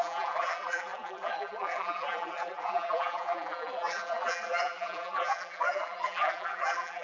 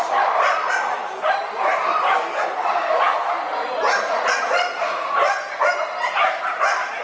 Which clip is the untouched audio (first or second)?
second